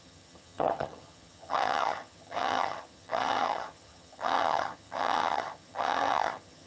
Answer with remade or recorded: remade